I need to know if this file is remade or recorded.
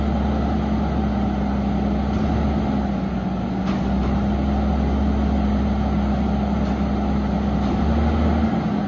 recorded